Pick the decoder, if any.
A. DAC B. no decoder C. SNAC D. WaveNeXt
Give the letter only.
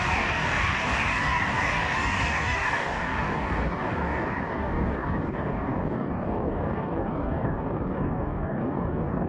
A